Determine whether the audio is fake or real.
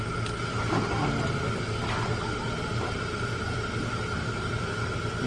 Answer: real